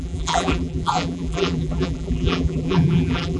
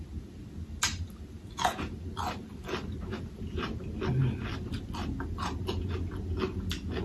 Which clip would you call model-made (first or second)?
first